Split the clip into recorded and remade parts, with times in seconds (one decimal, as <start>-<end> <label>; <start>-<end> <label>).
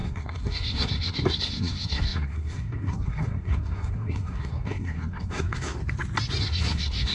0.0-5.8 remade; 5.8-6.4 recorded; 6.4-7.1 remade